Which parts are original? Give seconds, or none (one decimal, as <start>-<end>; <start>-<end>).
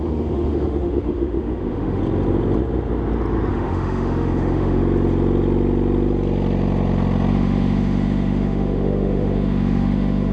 2.0-3.5; 4.8-7.3